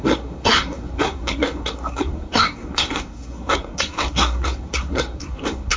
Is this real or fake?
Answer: fake